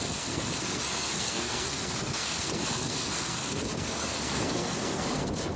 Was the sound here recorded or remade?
remade